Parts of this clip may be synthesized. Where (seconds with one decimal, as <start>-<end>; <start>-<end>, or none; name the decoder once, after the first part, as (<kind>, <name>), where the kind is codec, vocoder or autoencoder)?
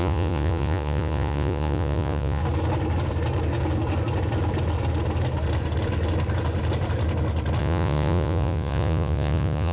0.0-2.4 (vocoder, Vocos); 7.6-9.7